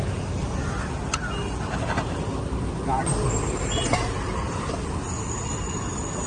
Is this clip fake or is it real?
real